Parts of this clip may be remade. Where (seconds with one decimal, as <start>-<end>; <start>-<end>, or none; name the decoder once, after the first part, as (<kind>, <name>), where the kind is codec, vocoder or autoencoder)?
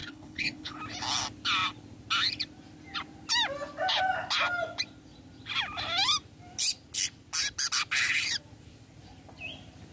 0.0-0.8 (codec, HILCodec)